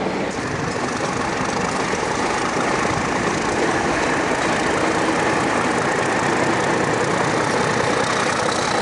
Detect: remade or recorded recorded